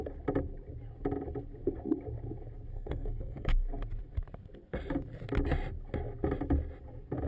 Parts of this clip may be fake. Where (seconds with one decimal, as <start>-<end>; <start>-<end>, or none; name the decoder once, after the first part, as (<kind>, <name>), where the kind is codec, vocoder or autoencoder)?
2.7-3.7 (codec, SNAC)